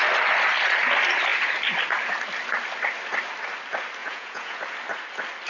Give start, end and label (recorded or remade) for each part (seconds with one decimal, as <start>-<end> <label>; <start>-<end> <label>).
0.0-4.0 recorded; 4.0-4.6 remade; 4.6-5.5 recorded